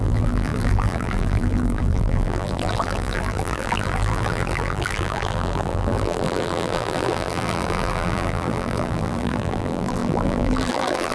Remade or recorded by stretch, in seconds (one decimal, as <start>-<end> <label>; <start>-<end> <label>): 0.0-11.1 remade